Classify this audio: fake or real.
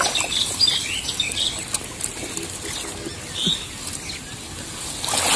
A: real